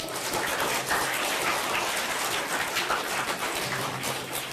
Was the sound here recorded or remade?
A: recorded